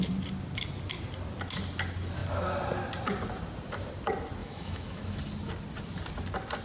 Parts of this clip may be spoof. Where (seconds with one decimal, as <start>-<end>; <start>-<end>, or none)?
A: 4.4-5.2